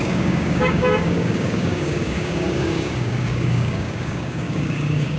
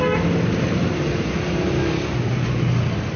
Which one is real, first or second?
second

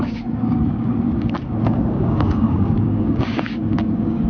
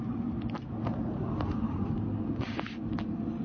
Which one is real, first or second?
second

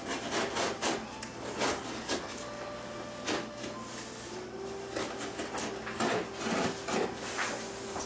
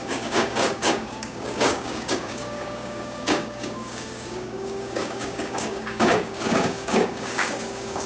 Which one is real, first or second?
first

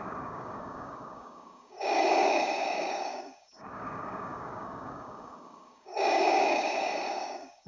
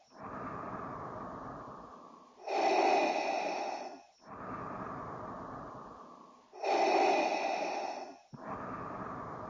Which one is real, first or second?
second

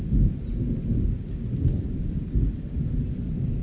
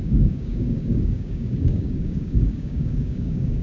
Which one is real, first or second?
first